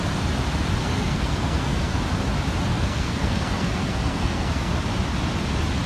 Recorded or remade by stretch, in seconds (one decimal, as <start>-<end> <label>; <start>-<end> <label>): 0.0-0.8 recorded; 0.8-2.0 remade; 2.0-2.7 recorded; 2.7-4.7 remade; 4.7-5.9 recorded